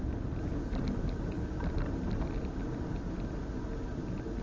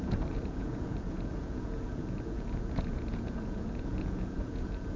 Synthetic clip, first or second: second